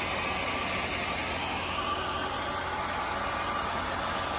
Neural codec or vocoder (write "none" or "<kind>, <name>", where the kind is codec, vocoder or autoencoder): none